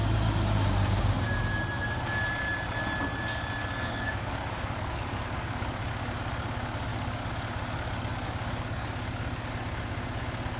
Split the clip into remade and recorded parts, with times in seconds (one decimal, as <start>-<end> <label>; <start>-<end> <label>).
0.0-3.6 recorded; 3.6-5.9 remade; 5.9-6.9 recorded; 6.9-9.5 remade; 9.5-10.6 recorded